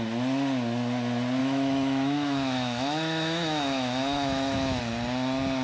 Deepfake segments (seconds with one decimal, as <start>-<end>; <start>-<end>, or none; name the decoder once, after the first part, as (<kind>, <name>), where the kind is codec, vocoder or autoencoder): 1.4-4.8 (autoencoder, DAC-VAE)